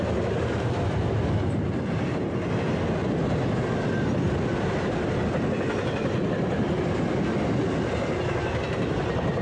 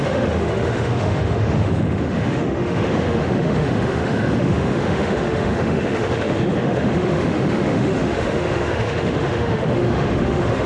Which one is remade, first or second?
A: second